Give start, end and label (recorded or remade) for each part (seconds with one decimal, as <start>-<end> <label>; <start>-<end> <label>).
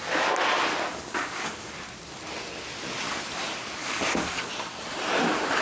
0.0-0.9 recorded; 0.9-1.7 remade; 1.7-3.8 recorded; 3.8-4.5 remade; 4.5-5.6 recorded